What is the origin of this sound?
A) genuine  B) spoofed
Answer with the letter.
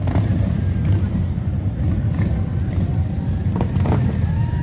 B